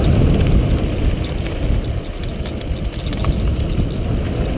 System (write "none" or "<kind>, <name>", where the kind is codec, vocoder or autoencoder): none